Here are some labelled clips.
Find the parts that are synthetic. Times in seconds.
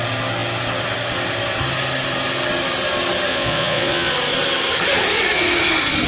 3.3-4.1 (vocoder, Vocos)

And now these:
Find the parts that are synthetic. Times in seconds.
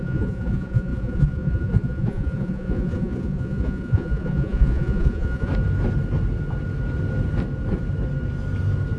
0.0-5.5 (vocoder, Vocos)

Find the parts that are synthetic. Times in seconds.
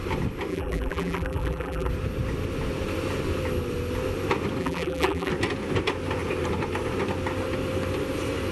0.5-1.9 (vocoder, BigVGAN v2); 4.6-5.3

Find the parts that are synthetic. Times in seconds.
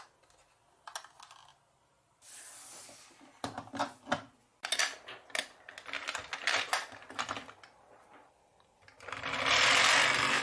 none